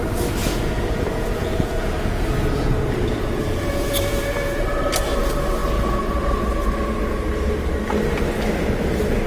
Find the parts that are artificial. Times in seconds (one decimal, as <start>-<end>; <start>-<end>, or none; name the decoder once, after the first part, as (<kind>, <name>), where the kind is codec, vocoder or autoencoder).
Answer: 0.4-4.6 (vocoder, Vocos)